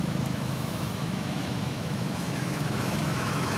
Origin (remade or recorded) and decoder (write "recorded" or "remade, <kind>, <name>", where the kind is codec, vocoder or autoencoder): remade, autoencoder, DAC-VAE